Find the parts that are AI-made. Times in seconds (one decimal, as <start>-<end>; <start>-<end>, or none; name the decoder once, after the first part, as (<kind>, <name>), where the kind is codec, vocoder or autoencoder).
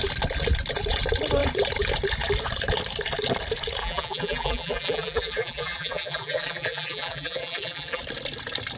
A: 3.8-8.0 (vocoder, BigVGAN v2)